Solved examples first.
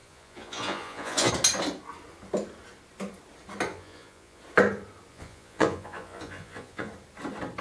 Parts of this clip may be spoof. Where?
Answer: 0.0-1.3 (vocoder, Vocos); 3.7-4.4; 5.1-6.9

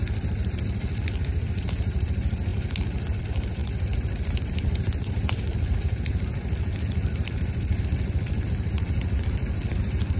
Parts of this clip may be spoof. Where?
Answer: none

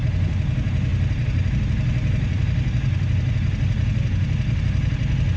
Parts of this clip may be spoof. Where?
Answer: none

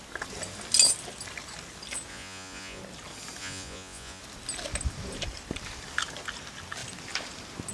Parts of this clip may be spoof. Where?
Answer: 2.1-2.8 (vocoder, Vocos); 3.4-4.2